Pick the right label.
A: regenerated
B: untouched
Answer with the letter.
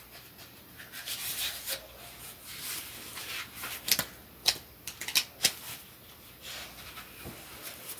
B